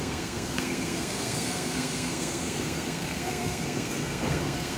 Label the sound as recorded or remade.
remade